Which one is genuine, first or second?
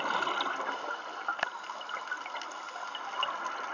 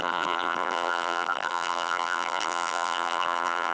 first